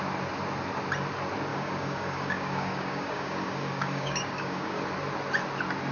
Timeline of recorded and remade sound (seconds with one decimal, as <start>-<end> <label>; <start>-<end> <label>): 0.0-1.5 recorded; 1.5-4.8 remade; 4.8-5.9 recorded